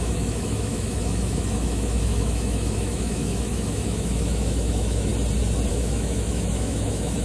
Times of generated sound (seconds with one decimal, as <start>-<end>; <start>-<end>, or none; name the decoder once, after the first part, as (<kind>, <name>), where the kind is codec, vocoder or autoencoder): 0.0-5.1 (autoencoder, DAC-VAE); 5.7-7.2